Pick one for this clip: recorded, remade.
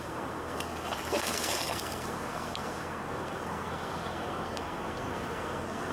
remade